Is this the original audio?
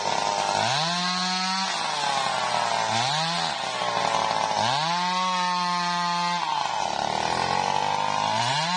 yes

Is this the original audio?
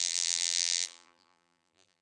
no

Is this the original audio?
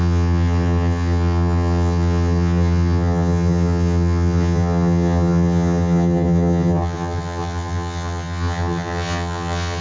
no